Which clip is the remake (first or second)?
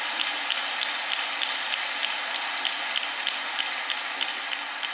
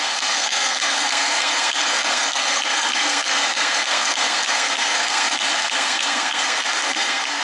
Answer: second